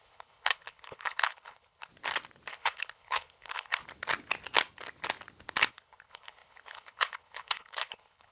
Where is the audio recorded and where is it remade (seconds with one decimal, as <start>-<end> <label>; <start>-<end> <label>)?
0.0-1.9 remade; 1.9-2.5 recorded; 2.5-3.8 remade; 3.8-5.7 recorded; 5.7-8.3 remade